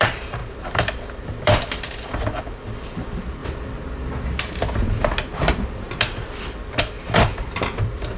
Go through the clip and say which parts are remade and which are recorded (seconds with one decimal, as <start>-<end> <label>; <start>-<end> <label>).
0.0-3.4 remade; 3.4-6.0 recorded; 6.0-8.2 remade